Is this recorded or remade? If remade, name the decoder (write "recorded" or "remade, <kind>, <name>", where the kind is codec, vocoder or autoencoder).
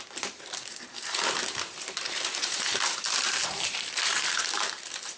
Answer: remade, vocoder, BigVGAN v2